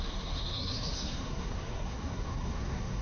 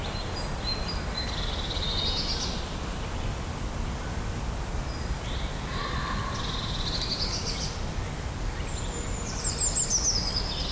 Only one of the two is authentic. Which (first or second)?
second